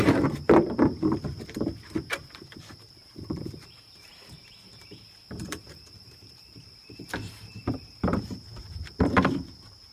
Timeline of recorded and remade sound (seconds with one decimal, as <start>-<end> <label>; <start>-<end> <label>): 0.0-9.9 remade